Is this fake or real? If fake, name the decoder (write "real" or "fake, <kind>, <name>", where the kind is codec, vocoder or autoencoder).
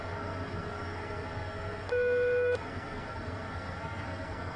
fake, codec, SNAC